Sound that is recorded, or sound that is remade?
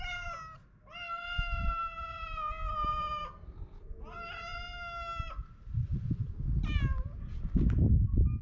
recorded